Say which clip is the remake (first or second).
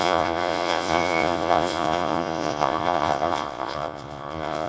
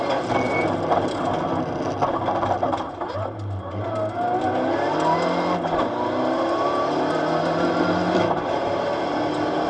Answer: first